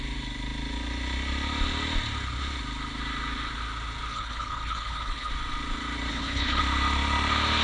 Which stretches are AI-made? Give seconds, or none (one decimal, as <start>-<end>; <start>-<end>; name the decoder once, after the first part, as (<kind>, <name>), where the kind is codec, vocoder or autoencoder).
4.1-5.3 (codec, HILCodec); 6.1-6.6